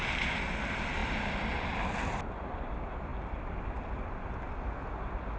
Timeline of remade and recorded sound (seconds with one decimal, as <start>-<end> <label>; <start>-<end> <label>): 0.0-5.4 recorded